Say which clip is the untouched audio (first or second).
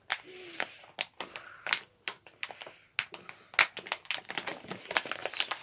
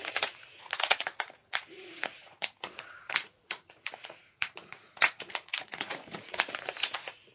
first